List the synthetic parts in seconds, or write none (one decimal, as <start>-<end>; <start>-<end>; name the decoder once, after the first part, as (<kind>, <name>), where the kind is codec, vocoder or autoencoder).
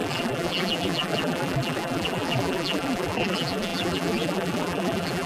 0.0-5.3 (vocoder, BigVGAN v2)